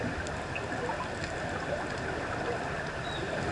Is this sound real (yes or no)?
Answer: yes